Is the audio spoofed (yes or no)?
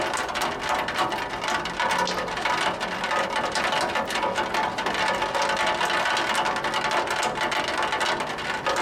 no